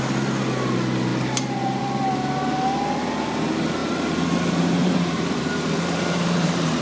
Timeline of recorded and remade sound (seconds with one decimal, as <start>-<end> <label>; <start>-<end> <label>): 0.0-1.1 recorded; 1.1-1.8 remade; 1.8-3.8 recorded; 3.8-6.8 remade